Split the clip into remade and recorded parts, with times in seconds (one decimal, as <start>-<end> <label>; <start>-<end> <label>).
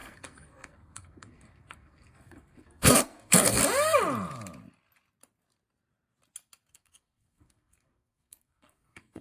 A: 0.0-3.6 remade; 3.6-6.7 recorded; 6.7-9.2 remade